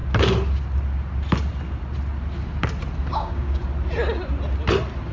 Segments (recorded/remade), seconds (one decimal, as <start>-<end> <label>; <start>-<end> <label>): 0.0-3.1 recorded; 3.1-3.6 remade; 3.6-5.1 recorded